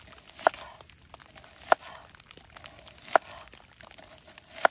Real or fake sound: real